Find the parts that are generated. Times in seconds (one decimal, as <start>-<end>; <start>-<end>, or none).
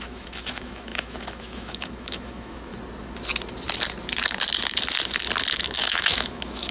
0.0-2.7; 5.5-6.7